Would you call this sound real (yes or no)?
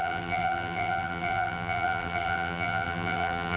no